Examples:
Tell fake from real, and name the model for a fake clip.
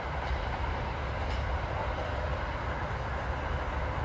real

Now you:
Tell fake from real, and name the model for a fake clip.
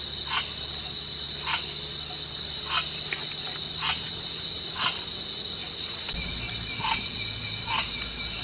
real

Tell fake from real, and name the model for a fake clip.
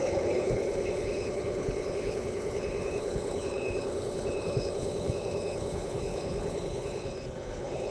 fake, codec, HILCodec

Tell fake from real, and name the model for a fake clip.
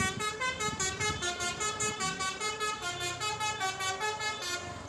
real